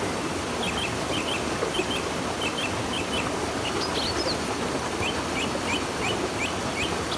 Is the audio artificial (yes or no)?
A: no